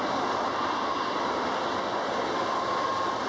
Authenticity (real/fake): real